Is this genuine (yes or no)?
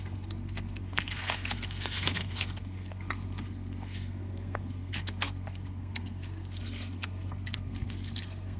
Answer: no